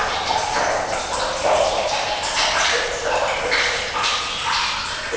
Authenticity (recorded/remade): recorded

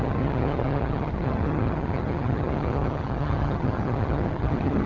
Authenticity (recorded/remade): remade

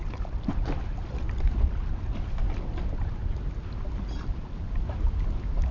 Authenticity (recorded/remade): recorded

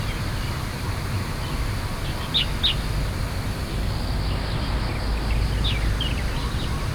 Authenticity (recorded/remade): recorded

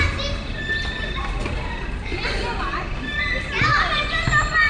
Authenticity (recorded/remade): recorded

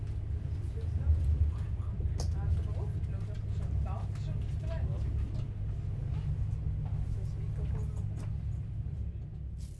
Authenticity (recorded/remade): recorded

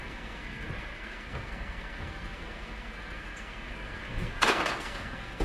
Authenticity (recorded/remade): remade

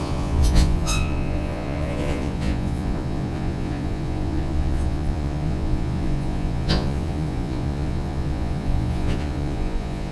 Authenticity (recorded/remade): remade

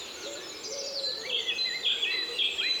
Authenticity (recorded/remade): recorded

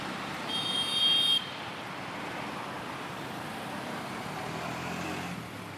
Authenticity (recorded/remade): recorded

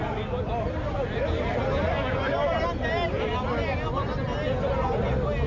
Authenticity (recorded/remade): recorded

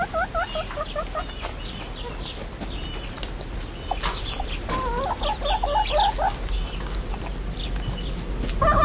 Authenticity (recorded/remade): recorded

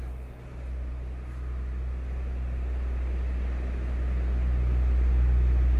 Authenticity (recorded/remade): recorded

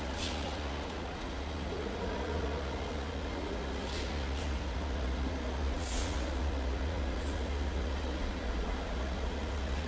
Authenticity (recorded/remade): remade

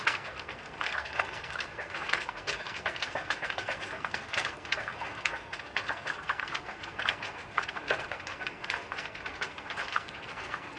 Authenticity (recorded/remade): remade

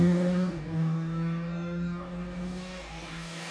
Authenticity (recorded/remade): remade